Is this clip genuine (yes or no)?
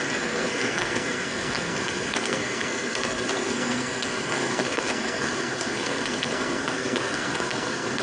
no